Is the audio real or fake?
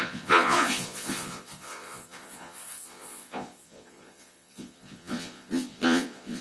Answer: fake